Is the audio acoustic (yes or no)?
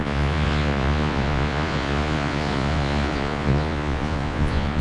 no